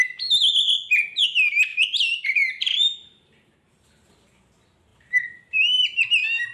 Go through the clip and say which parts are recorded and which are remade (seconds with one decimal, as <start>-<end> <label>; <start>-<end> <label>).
0.0-1.7 recorded; 1.7-4.4 remade; 4.4-4.9 recorded; 4.9-6.0 remade; 6.0-6.5 recorded

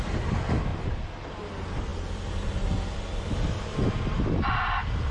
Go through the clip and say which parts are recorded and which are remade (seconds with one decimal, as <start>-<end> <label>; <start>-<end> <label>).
0.0-5.1 recorded

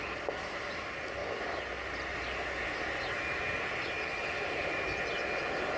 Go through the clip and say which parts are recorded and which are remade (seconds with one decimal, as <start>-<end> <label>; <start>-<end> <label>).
0.0-5.8 recorded

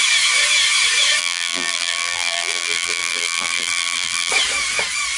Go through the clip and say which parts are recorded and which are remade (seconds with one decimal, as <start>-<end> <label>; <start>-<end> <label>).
0.0-1.2 recorded; 1.2-4.3 remade; 4.3-5.2 recorded

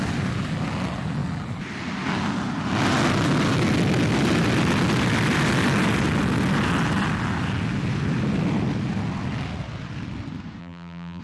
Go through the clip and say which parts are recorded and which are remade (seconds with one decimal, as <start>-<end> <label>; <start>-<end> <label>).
0.0-10.6 recorded; 10.6-11.2 remade

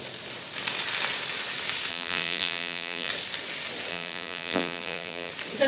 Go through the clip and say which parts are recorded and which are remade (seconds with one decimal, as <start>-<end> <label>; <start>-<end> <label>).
0.0-1.9 recorded; 1.9-3.1 remade; 3.1-3.9 recorded; 3.9-5.3 remade; 5.3-5.7 recorded

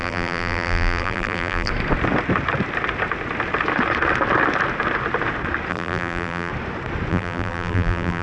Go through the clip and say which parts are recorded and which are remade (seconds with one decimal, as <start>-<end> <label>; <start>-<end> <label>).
0.0-1.7 remade; 1.7-5.7 recorded; 5.7-6.5 remade; 6.5-7.1 recorded; 7.1-8.2 remade